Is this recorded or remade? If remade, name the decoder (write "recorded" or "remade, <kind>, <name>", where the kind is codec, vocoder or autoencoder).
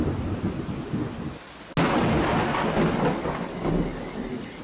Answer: recorded